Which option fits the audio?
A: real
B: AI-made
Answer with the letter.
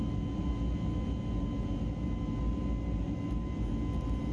A